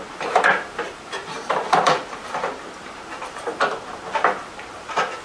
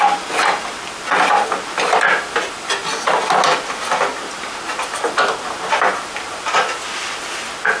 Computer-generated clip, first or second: first